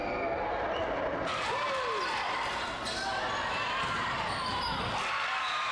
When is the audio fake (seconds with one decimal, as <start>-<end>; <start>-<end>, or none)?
none